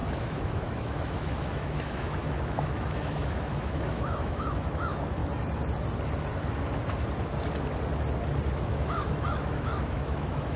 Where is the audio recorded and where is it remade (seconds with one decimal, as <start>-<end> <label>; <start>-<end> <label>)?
0.0-5.2 remade; 5.2-8.5 recorded; 8.5-10.6 remade